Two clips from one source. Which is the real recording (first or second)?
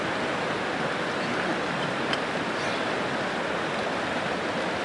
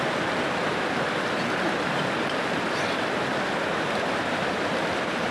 first